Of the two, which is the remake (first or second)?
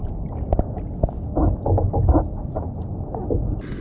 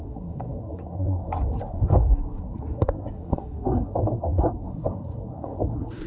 second